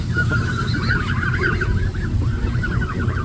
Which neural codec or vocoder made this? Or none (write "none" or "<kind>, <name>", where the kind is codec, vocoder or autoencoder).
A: none